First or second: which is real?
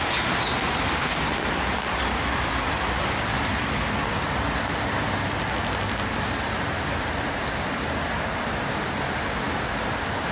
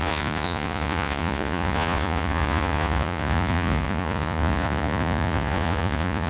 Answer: first